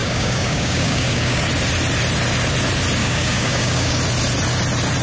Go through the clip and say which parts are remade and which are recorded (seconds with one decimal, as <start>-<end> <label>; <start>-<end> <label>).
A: 0.0-1.5 remade; 1.5-3.0 recorded; 3.0-4.0 remade; 4.0-5.0 recorded